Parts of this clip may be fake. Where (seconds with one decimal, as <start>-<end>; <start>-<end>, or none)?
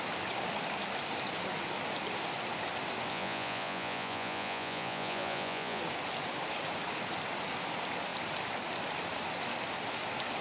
3.1-5.8